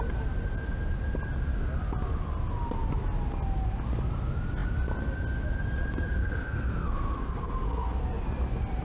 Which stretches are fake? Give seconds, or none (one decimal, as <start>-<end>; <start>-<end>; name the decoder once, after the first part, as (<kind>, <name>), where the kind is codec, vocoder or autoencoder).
6.2-8.0 (codec, SNAC)